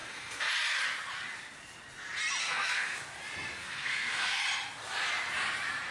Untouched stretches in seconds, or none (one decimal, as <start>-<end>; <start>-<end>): 0.5-2.4; 3.0-3.6; 4.4-5.9